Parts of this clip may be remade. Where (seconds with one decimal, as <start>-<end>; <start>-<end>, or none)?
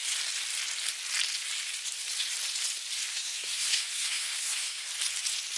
3.1-4.9